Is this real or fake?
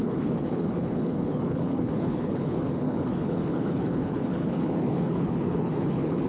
fake